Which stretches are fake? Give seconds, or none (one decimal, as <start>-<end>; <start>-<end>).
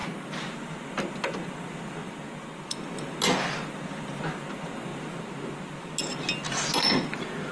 none